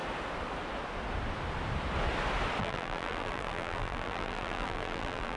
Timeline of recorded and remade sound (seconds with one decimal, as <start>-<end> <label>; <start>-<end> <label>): 0.0-2.6 recorded; 2.6-5.4 remade